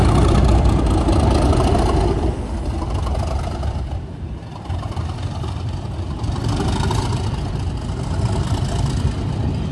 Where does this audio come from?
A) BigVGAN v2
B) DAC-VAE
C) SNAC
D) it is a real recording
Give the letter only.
A